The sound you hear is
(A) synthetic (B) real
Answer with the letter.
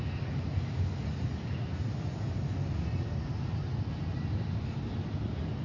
B